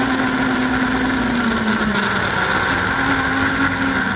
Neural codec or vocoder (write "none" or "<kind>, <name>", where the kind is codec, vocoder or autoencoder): none